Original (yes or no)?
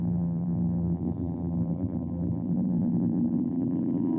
no